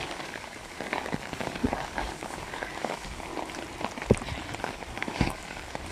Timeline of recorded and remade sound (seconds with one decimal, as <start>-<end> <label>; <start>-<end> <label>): 0.0-3.3 remade; 3.3-4.6 recorded; 4.6-5.9 remade